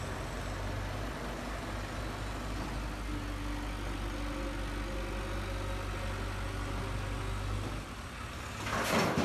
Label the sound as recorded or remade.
recorded